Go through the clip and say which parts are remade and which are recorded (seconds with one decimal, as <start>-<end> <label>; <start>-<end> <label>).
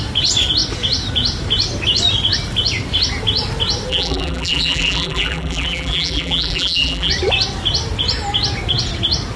0.0-3.9 recorded; 3.9-7.1 remade; 7.1-9.4 recorded